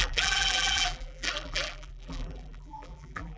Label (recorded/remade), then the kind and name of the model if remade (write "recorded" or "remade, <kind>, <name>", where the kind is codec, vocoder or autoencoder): remade, vocoder, BigVGAN v2